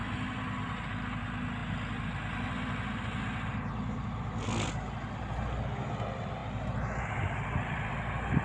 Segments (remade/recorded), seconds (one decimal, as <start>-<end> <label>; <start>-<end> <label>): 0.0-8.4 recorded